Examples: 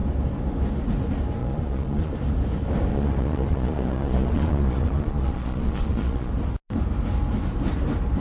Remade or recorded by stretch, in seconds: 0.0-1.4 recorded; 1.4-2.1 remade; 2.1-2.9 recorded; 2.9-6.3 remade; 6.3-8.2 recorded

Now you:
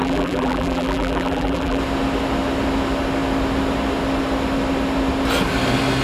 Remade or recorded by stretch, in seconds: 0.0-1.8 remade; 1.8-6.0 recorded

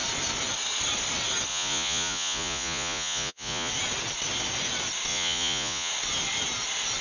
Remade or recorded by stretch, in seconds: 0.0-1.5 recorded; 1.5-3.7 remade; 3.7-5.1 recorded; 5.1-5.9 remade; 5.9-7.0 recorded

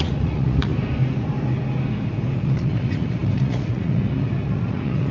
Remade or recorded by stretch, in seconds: 0.0-0.7 remade; 0.7-2.4 recorded; 2.4-5.1 remade

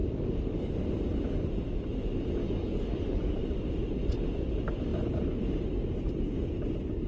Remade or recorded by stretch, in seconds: 0.0-0.7 remade; 0.7-2.4 recorded; 2.4-3.4 remade; 3.4-7.1 recorded

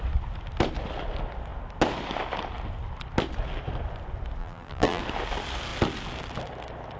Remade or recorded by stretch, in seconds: 0.0-4.4 recorded; 4.4-5.0 remade; 5.0-7.0 recorded

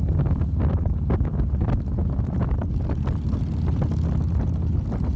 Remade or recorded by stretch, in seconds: 0.0-2.0 recorded; 2.0-3.4 remade; 3.4-5.2 recorded